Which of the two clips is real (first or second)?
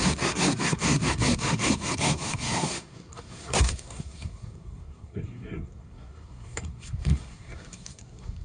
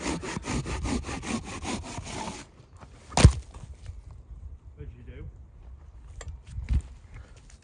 second